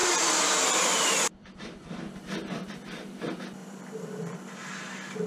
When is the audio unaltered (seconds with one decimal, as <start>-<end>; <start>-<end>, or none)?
3.2-3.6; 4.6-5.3